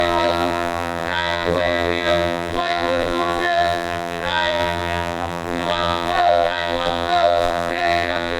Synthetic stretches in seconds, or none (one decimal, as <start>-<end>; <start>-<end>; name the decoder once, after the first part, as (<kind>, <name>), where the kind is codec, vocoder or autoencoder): 0.0-8.4 (vocoder, BigVGAN v2)